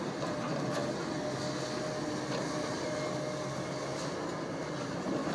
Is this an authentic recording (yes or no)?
yes